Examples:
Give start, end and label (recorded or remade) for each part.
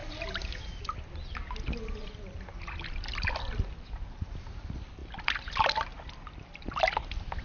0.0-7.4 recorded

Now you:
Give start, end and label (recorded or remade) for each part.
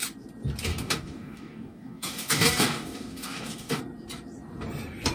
0.0-0.7 recorded; 0.7-3.8 remade; 3.8-5.1 recorded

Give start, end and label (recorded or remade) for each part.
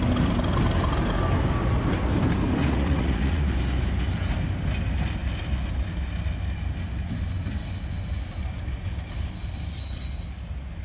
0.0-2.6 recorded; 2.6-3.5 remade; 3.5-10.8 recorded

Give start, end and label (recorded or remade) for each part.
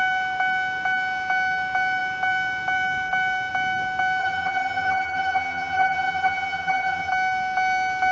0.0-4.2 recorded; 4.2-7.1 remade; 7.1-8.1 recorded